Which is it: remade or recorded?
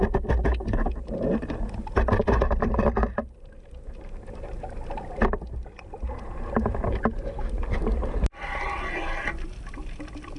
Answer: recorded